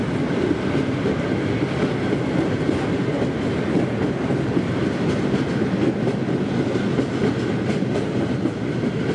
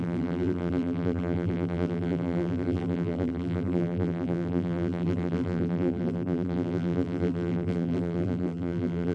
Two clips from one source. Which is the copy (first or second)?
second